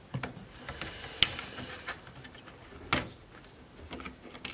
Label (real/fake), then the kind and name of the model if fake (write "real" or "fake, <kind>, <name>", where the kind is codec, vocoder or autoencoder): real